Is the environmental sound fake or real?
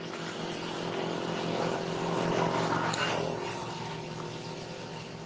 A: real